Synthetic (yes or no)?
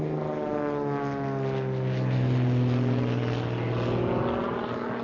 no